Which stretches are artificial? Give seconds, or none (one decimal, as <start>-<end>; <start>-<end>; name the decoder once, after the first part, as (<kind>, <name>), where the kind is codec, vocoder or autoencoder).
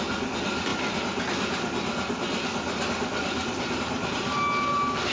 none